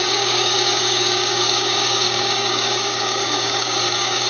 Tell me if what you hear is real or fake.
fake